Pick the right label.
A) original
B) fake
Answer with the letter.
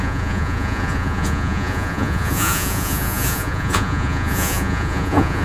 B